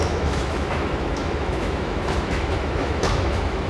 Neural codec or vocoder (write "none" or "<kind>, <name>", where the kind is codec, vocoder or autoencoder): autoencoder, DAC-VAE